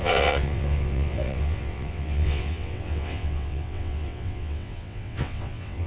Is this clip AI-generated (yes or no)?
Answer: yes